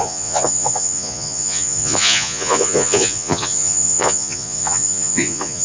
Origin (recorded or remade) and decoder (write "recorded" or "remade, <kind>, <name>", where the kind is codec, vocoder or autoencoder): remade, vocoder, Vocos